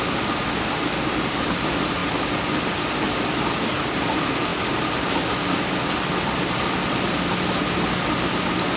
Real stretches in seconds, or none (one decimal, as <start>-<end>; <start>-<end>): 0.0-8.8